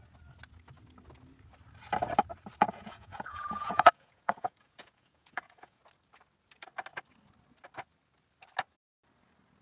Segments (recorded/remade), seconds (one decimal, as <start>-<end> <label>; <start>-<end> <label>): 0.0-2.6 recorded; 2.6-5.8 remade; 5.8-9.6 recorded